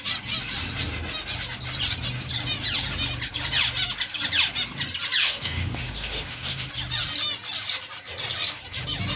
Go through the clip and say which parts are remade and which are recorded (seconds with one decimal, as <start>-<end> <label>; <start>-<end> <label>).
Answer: 0.0-5.2 recorded; 5.2-6.7 remade; 6.7-9.2 recorded